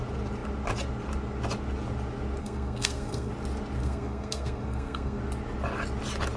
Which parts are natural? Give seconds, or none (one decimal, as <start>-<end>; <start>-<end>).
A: 0.0-2.4; 3.3-3.8; 5.2-6.4